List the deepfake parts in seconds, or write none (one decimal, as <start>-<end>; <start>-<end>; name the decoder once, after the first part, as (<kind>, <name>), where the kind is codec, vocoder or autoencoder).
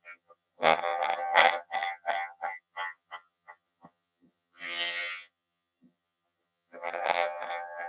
0.0-7.9 (vocoder, HiFi-GAN)